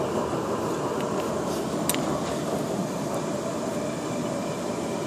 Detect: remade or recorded recorded